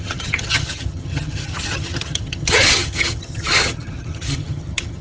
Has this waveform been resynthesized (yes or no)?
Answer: yes